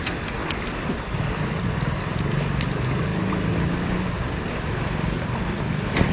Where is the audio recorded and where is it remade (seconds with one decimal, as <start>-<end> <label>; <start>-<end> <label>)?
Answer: 0.0-6.1 recorded